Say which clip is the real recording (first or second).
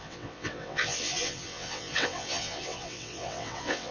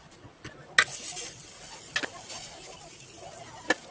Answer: second